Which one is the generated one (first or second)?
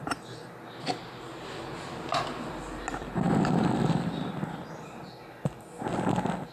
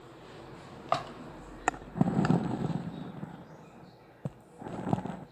second